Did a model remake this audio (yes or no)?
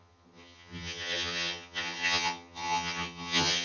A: yes